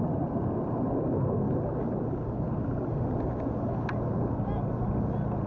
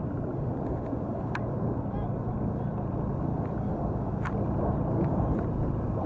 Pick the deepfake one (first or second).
second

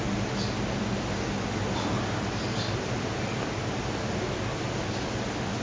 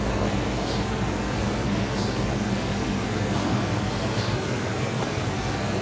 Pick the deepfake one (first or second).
second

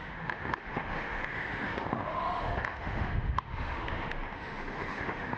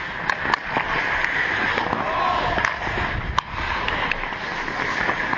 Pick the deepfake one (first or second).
first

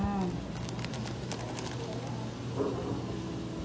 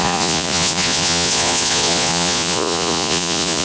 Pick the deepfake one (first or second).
second